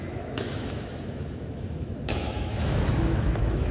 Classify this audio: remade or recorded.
remade